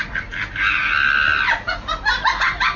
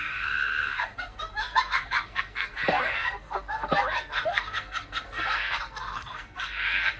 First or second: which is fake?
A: second